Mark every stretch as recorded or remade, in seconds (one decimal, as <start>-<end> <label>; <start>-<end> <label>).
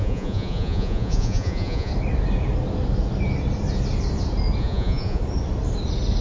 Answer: 0.0-1.9 remade; 1.9-4.6 recorded; 4.6-5.2 remade; 5.2-6.2 recorded